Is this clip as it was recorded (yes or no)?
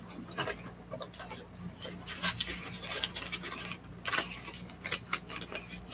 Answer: yes